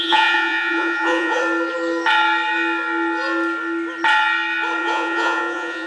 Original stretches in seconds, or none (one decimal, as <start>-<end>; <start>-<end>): 1.4-4.8